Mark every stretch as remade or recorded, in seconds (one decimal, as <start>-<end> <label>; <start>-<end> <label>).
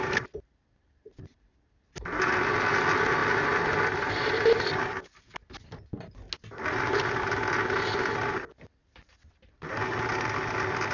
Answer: 0.0-10.9 recorded